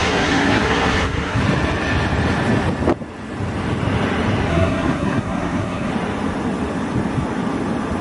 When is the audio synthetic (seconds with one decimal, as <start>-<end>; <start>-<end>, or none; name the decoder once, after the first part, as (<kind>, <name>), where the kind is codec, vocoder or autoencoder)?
0.0-1.4 (codec, SNAC); 4.5-5.9